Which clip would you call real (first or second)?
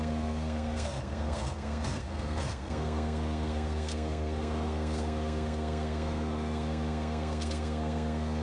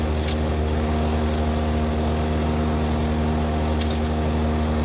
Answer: second